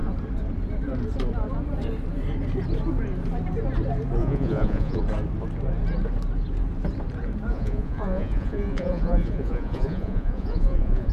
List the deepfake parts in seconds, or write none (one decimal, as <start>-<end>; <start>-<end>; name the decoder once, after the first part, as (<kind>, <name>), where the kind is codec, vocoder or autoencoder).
4.2-5.0 (vocoder, Vocos); 7.5-11.1